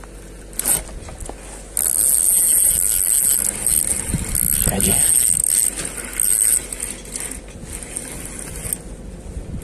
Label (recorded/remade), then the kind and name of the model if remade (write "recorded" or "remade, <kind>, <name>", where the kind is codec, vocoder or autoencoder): recorded